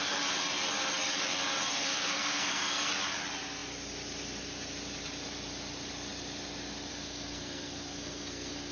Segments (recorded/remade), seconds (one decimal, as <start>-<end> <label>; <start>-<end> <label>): 0.0-1.7 recorded; 1.7-2.9 remade; 2.9-6.9 recorded; 6.9-8.7 remade